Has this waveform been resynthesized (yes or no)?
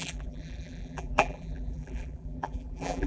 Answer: yes